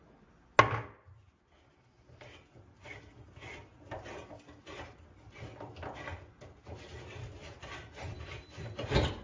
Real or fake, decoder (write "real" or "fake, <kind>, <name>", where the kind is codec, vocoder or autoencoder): real